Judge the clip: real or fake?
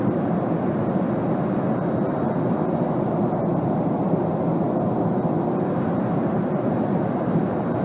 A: real